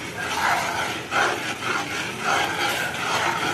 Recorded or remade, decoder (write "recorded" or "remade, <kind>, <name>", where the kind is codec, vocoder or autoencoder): recorded